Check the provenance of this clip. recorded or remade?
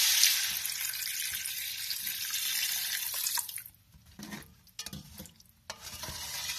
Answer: recorded